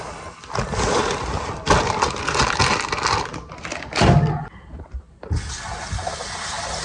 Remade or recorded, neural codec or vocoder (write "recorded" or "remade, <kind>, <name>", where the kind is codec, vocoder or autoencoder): recorded